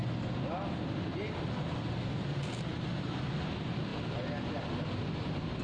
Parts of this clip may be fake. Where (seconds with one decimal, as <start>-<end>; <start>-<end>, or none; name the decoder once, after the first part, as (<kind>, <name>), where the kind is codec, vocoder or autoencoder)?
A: none